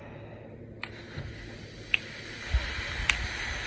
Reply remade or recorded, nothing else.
recorded